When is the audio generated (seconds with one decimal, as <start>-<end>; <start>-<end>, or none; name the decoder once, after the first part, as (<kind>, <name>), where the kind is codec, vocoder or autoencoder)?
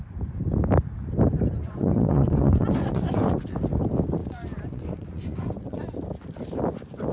1.6-3.4 (vocoder, Vocos); 4.2-5.8